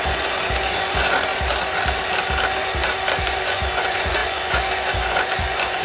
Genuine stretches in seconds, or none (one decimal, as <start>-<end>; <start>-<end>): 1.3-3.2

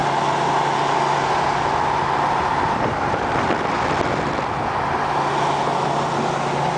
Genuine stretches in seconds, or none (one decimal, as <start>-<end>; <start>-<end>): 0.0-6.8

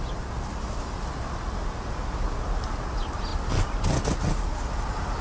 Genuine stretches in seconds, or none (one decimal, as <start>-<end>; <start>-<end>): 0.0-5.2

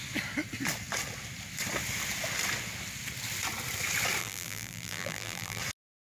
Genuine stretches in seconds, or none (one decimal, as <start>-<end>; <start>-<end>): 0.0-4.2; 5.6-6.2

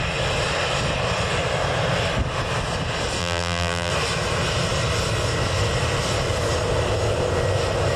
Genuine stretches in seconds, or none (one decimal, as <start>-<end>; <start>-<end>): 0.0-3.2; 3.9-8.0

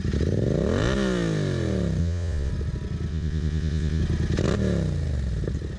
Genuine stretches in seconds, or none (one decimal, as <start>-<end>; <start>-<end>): 0.0-2.0; 2.5-3.1; 4.0-5.8

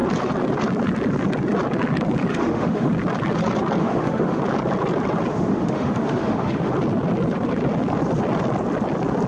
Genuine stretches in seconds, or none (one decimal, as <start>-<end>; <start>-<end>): 0.0-2.3; 2.9-3.8; 4.4-5.3; 6.7-9.3